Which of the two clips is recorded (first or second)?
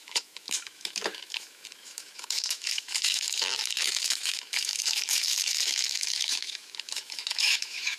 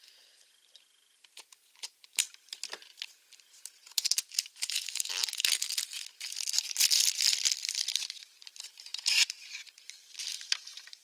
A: second